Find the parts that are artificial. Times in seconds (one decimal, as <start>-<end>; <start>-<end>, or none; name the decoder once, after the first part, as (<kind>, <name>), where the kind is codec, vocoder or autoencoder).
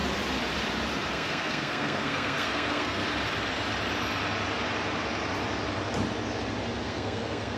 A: 1.1-3.0 (codec, SNAC); 6.8-7.6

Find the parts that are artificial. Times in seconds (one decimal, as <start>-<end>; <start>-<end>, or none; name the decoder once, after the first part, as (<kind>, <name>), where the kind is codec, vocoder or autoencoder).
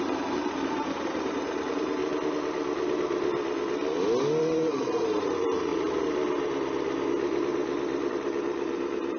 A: 0.0-2.0 (vocoder, BigVGAN v2); 4.4-5.7; 8.1-9.2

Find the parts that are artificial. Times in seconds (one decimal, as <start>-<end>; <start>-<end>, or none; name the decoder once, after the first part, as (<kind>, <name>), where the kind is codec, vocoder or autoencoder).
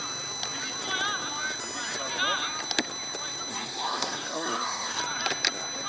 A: 3.5-5.0 (codec, SNAC)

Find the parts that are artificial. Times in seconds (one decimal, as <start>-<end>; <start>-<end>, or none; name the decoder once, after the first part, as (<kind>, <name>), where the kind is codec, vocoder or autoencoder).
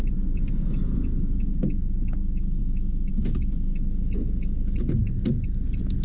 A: 2.6-3.1 (autoencoder, DAC-VAE)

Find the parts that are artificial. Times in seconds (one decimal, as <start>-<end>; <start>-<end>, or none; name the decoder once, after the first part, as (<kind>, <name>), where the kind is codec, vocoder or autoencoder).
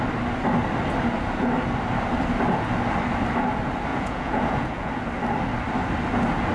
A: 3.9-4.9 (vocoder, Vocos)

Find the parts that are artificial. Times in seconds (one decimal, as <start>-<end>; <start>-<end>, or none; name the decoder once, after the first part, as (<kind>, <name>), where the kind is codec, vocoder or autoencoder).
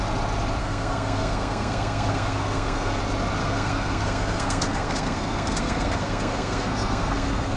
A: 0.6-3.0 (codec, SNAC); 3.4-7.6